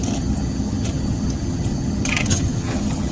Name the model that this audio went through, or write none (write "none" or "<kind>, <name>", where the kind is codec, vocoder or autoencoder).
vocoder, HiFi-GAN